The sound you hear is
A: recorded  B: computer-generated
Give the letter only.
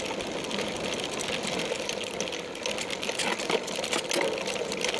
A